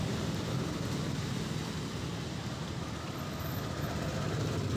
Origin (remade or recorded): recorded